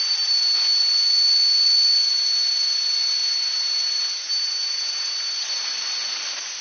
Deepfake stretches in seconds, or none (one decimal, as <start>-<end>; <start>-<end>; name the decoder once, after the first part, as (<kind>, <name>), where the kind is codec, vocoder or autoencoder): none